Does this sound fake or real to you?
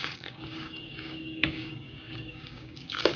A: fake